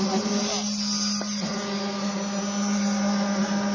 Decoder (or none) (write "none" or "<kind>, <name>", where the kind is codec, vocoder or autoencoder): none